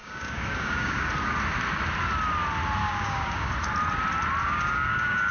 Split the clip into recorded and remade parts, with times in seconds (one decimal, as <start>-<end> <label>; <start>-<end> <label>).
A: 0.0-1.1 remade; 1.1-2.8 recorded; 2.8-3.5 remade; 3.5-4.4 recorded; 4.4-5.3 remade

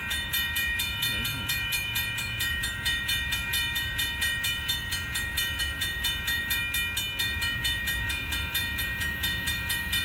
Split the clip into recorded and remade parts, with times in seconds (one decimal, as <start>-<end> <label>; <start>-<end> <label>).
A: 0.0-6.6 remade; 6.6-7.2 recorded; 7.2-10.0 remade

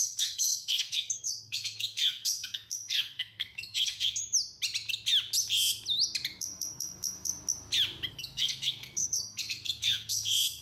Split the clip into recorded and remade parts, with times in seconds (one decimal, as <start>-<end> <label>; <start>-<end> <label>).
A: 0.0-4.2 remade; 4.2-6.4 recorded; 6.4-7.3 remade; 7.3-8.1 recorded; 8.1-10.6 remade

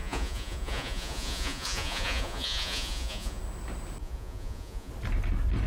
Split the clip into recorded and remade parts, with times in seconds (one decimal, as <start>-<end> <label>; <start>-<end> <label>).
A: 0.0-3.4 remade; 3.4-4.0 recorded; 4.0-4.9 remade; 4.9-5.7 recorded